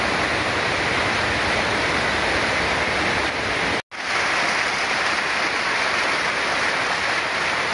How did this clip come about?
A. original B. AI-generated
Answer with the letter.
A